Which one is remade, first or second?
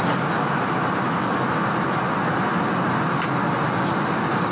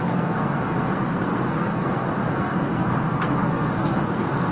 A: second